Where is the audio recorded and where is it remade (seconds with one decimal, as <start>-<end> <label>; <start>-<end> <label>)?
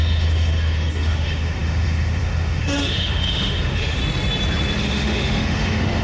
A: 0.0-4.0 remade; 4.0-4.8 recorded; 4.8-6.0 remade